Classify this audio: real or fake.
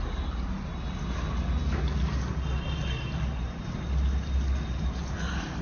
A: real